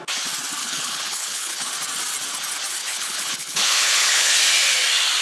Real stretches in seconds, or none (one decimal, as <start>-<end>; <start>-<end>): 0.0-0.6; 1.7-2.8; 4.3-5.2